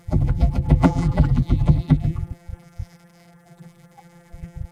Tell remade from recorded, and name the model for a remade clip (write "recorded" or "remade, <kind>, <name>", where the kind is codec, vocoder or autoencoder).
remade, vocoder, BigVGAN v2